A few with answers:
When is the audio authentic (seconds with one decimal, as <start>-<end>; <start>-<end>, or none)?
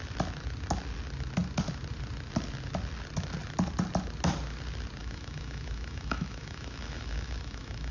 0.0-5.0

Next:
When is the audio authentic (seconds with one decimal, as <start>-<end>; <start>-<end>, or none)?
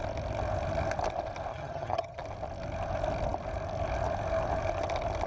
0.0-1.5; 2.2-5.3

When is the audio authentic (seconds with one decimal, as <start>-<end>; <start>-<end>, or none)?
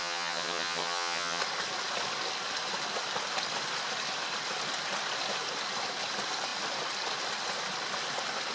1.4-8.5